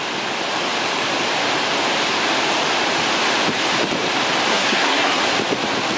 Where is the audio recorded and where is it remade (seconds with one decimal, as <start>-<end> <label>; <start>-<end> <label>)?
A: 0.0-4.5 recorded; 4.5-5.2 remade; 5.2-6.0 recorded